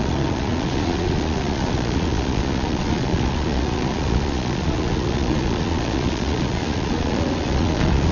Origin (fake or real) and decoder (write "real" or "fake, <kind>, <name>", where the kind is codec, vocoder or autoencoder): fake, vocoder, Vocos